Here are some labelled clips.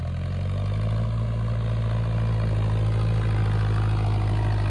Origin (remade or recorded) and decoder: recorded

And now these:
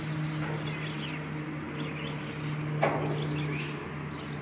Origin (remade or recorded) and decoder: recorded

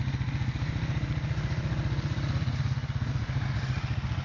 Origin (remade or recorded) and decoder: recorded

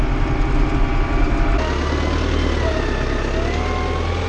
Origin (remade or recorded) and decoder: recorded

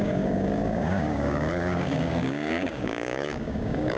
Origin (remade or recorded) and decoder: remade, codec, DAC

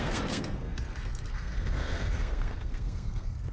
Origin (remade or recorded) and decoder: remade, codec, SNAC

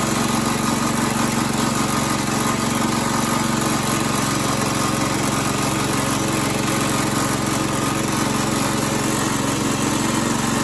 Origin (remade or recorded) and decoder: recorded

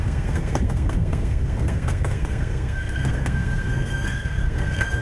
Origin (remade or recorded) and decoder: remade, codec, SNAC